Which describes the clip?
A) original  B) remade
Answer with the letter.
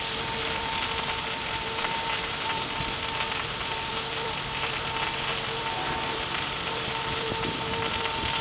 B